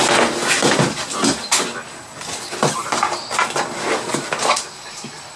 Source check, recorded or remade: recorded